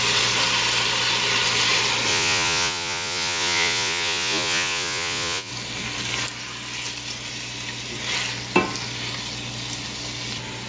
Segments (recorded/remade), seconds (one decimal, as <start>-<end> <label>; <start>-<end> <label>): 0.0-2.1 recorded; 2.1-5.5 remade; 5.5-10.7 recorded